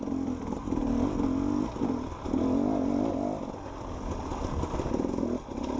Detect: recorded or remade recorded